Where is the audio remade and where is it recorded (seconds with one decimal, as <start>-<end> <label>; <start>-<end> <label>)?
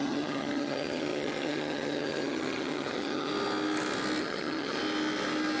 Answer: 0.0-3.3 remade; 3.3-4.2 recorded; 4.2-4.8 remade; 4.8-5.6 recorded